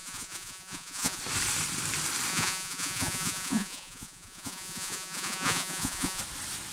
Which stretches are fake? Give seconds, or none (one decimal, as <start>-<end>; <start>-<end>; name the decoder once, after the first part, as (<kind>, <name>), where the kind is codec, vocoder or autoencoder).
0.0-1.2 (vocoder, Vocos); 2.3-6.2